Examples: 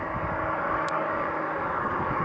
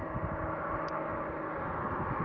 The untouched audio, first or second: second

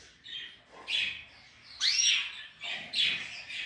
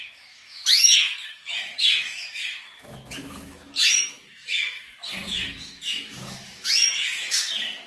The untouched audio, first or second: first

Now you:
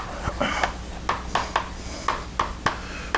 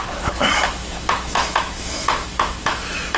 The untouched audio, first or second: first